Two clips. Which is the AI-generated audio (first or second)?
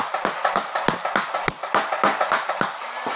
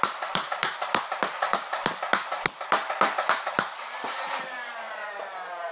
second